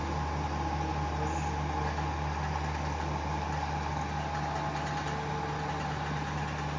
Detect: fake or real real